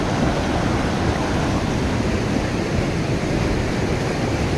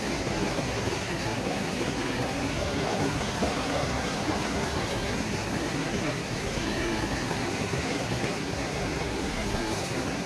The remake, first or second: second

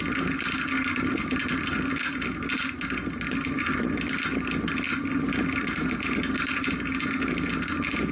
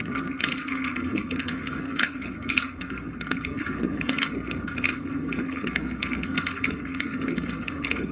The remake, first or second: second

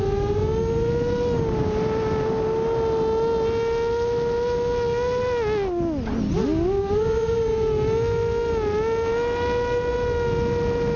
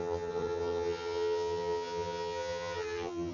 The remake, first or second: second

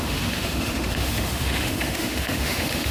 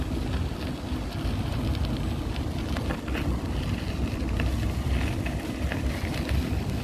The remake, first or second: first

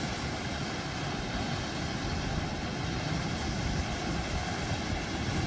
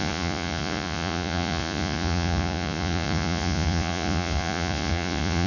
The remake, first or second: second